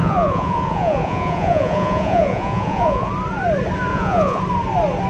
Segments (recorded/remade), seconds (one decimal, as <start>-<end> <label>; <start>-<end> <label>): 0.0-3.1 remade; 3.1-3.9 recorded; 3.9-4.4 remade; 4.4-5.1 recorded